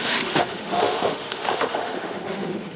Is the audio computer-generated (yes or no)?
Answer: yes